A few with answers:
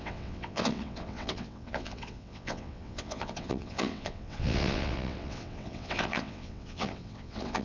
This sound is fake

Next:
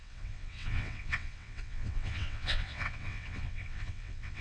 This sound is fake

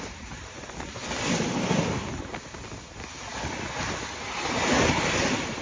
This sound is real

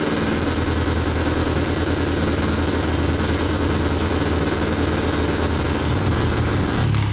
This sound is real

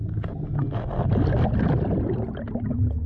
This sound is real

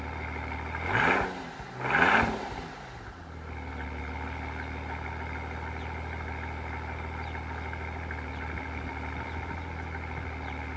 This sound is real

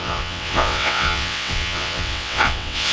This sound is fake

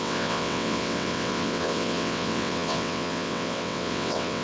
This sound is fake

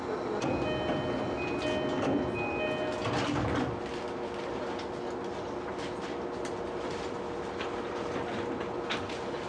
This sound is real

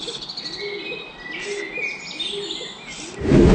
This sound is real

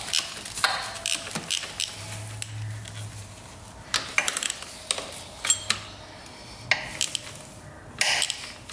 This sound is real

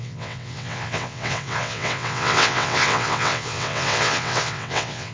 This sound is fake